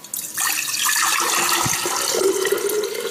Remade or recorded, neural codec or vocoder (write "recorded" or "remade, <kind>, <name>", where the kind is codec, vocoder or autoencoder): recorded